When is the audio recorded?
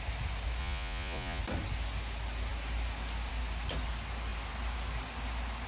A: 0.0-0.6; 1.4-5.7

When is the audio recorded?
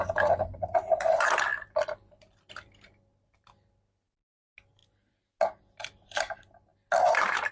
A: 0.0-7.5